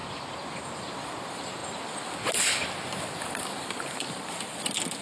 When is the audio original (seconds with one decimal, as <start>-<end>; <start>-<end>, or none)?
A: 0.0-0.8; 1.6-3.4